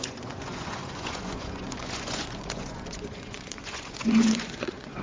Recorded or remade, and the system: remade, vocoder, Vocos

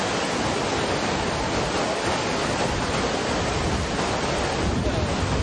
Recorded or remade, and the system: recorded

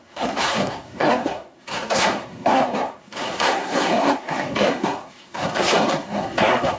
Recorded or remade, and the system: remade, codec, SNAC